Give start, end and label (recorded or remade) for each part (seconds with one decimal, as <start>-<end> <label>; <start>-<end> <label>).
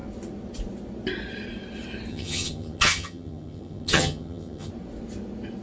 0.0-2.1 recorded; 2.1-4.7 remade; 4.7-5.6 recorded